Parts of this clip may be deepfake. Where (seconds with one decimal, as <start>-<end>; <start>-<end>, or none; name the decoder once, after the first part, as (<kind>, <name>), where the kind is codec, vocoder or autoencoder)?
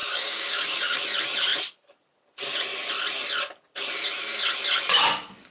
0.0-1.0 (codec, DAC)